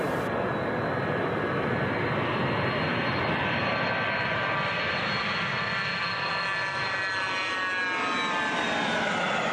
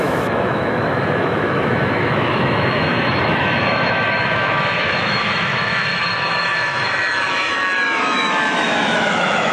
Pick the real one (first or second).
first